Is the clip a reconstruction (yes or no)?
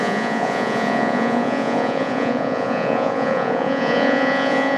yes